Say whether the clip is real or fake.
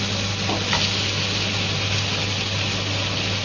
real